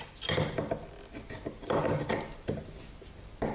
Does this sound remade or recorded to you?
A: recorded